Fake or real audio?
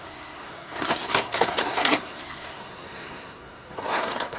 fake